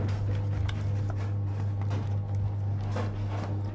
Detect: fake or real real